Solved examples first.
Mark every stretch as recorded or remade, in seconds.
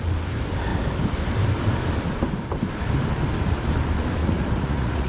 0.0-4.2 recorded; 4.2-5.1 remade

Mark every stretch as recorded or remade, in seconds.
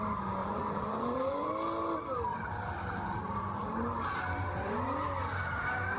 0.0-0.4 recorded; 0.4-1.5 remade; 1.5-6.0 recorded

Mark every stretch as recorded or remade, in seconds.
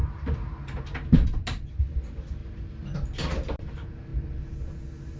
0.0-5.2 recorded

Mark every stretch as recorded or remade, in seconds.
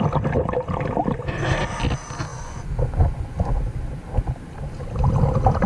0.0-2.3 recorded; 2.3-3.5 remade; 3.5-5.7 recorded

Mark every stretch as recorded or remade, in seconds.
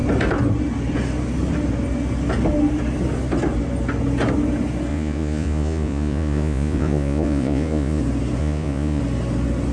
0.0-4.9 recorded; 4.9-8.0 remade; 8.0-8.4 recorded; 8.4-9.0 remade; 9.0-9.7 recorded